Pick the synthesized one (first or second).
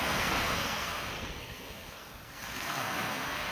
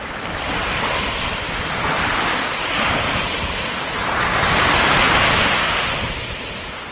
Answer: first